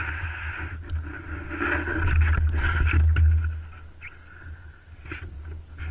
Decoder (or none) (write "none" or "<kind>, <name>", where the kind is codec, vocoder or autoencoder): none